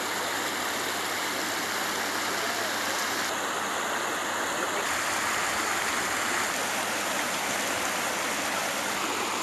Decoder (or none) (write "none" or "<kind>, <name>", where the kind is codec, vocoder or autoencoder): none